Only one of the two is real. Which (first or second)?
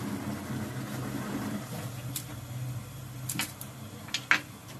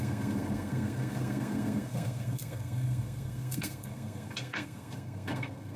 first